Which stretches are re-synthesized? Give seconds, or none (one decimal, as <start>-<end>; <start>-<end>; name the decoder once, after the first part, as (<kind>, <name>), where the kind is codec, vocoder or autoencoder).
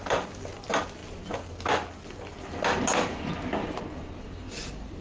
none